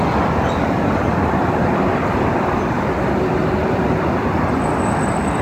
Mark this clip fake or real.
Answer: real